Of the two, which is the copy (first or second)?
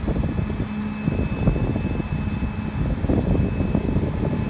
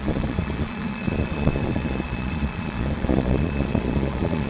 second